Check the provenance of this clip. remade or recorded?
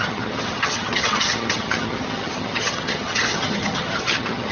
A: remade